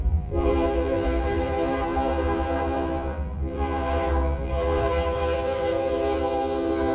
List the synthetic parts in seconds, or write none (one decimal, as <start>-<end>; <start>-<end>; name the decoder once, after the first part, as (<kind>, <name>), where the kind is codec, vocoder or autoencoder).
0.0-6.9 (vocoder, BigVGAN v2)